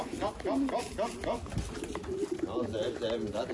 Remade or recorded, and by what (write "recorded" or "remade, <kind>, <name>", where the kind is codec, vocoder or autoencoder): recorded